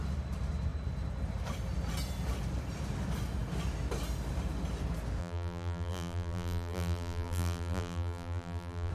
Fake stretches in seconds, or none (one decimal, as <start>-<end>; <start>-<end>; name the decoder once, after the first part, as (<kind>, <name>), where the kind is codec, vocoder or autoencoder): 5.2-8.9 (vocoder, BigVGAN v2)